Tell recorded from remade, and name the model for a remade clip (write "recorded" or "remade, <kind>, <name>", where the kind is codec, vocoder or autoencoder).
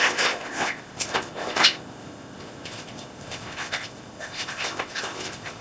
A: remade, codec, ZipCodec